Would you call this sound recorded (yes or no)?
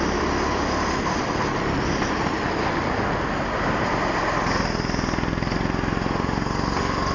yes